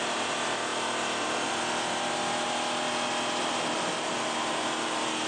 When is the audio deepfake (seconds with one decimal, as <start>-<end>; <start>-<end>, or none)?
none